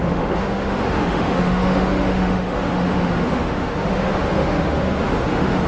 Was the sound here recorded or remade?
remade